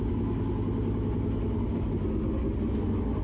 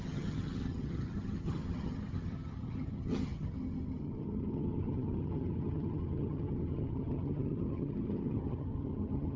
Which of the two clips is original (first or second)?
first